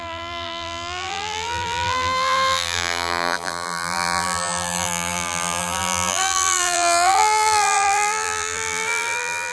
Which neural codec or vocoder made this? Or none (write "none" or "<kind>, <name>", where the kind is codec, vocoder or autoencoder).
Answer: vocoder, BigVGAN v2